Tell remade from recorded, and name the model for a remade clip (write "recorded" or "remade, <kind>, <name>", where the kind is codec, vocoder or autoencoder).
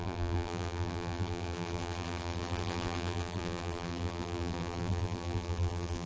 remade, vocoder, BigVGAN v2